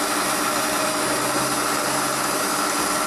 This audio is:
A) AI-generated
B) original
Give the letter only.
B